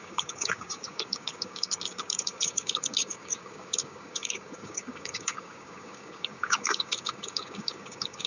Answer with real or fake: fake